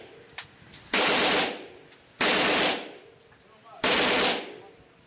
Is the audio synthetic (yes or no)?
no